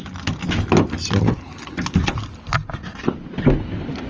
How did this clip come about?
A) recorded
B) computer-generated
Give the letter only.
A